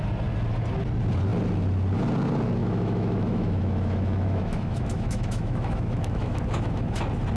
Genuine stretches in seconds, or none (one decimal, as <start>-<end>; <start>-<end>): 0.0-2.6; 7.0-7.4